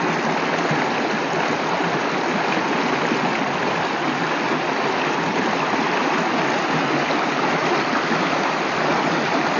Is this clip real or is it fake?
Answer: real